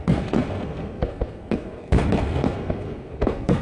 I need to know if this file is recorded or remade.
remade